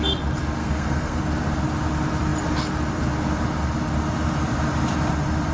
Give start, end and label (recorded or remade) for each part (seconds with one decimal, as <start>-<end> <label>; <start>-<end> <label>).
0.0-0.6 recorded; 0.6-1.2 remade; 1.2-5.5 recorded